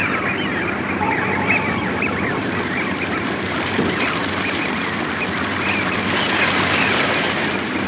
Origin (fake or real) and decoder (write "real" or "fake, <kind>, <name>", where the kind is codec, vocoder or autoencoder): real